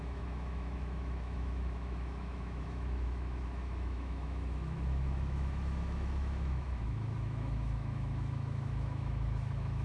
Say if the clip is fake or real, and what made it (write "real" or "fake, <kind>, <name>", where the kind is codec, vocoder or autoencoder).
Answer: fake, autoencoder, DAC-VAE